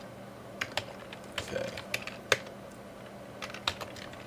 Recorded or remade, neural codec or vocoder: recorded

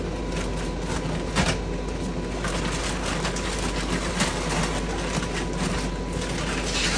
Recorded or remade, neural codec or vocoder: recorded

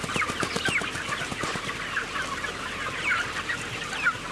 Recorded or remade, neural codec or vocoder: recorded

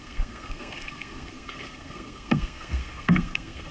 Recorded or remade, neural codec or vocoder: remade, codec, SNAC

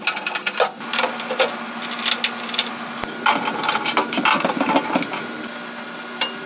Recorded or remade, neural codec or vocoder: recorded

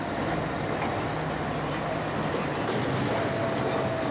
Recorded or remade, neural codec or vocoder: recorded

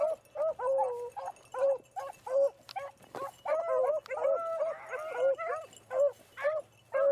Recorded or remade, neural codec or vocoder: recorded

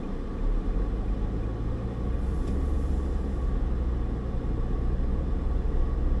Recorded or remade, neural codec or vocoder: recorded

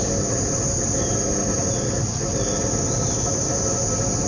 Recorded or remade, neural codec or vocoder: recorded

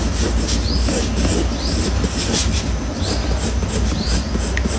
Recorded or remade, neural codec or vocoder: recorded